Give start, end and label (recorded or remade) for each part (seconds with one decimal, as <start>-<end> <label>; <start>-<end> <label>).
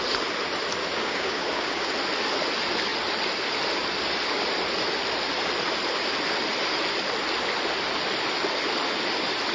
0.0-0.9 recorded; 0.9-1.9 remade; 1.9-9.5 recorded